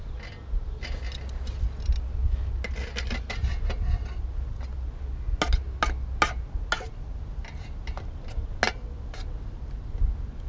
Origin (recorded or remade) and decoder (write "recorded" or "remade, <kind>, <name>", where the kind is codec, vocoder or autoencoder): recorded